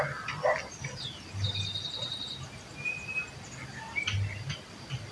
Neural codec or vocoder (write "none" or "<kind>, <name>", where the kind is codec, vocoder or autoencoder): none